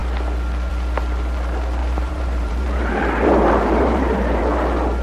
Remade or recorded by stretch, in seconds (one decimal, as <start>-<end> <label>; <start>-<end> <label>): 0.0-1.8 recorded; 1.8-4.4 remade; 4.4-5.0 recorded